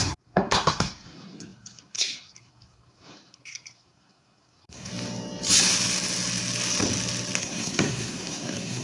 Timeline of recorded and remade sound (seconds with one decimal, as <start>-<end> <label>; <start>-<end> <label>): 0.0-4.9 remade; 4.9-7.4 recorded; 7.4-8.8 remade

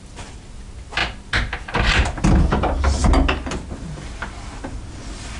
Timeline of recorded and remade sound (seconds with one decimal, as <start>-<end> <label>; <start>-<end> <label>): 0.0-5.4 recorded